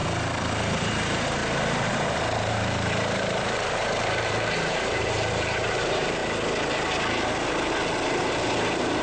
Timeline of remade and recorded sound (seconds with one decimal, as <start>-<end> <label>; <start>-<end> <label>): 0.0-0.8 recorded; 0.8-6.2 remade; 6.2-9.0 recorded